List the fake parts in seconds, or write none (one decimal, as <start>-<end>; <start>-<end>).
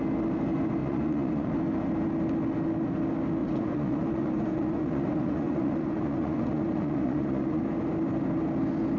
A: 0.8-1.5; 3.4-7.6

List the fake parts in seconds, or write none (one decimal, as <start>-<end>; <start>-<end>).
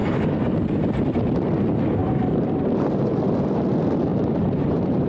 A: 2.0-3.1; 4.1-5.1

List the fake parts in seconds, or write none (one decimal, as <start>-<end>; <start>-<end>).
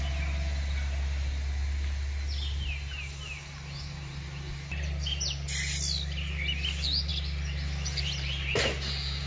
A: none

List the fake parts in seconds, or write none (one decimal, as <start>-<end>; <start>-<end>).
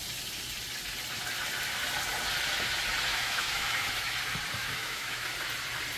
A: 3.1-4.1; 4.6-5.3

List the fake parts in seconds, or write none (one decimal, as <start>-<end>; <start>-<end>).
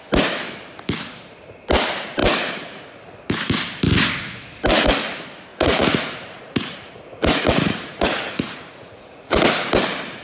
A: 5.5-9.4